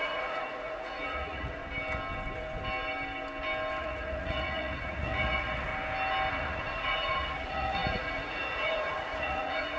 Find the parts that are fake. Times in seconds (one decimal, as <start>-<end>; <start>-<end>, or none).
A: 0.0-1.6; 3.8-5.7; 6.3-9.8